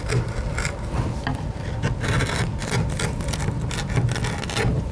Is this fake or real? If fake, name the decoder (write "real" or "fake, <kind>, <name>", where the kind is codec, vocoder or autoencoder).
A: real